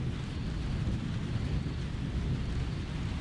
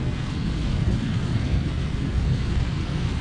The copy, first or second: second